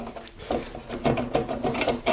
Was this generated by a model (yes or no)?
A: no